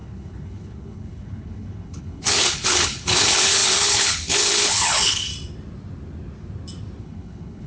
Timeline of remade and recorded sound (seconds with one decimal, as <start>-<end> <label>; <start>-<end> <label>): 0.0-5.3 remade; 5.3-7.0 recorded; 7.0-7.7 remade